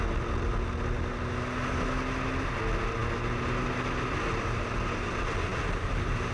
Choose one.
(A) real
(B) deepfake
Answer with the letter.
A